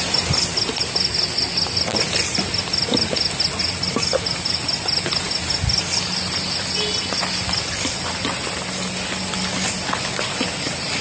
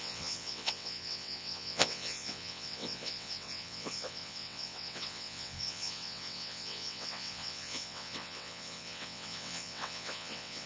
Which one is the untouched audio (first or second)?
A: first